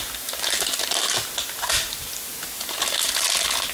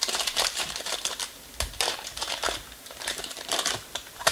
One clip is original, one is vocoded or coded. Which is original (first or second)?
first